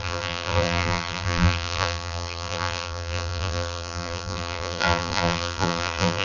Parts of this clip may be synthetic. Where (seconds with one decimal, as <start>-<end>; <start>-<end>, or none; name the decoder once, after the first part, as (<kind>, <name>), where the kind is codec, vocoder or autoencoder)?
0.0-6.2 (vocoder, BigVGAN v2)